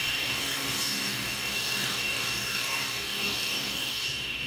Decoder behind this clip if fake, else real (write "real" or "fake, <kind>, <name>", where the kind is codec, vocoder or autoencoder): fake, codec, DAC